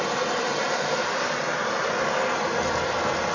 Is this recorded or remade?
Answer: recorded